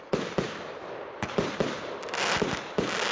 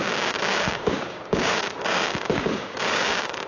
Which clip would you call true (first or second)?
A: first